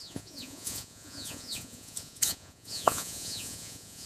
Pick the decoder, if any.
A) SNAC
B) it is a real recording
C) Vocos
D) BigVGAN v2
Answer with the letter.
C